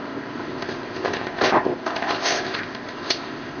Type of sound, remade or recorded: remade